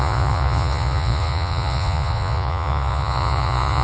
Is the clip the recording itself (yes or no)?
no